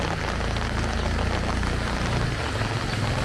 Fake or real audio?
real